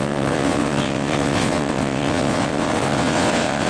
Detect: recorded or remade remade